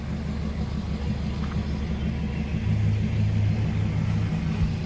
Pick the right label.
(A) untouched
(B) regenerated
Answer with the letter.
A